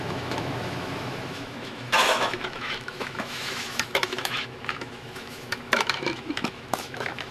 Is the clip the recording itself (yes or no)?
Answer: no